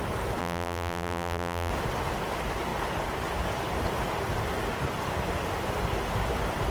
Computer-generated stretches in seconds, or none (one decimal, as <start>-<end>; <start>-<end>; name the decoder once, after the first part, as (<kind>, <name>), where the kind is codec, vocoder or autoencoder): 0.4-1.7 (vocoder, BigVGAN v2)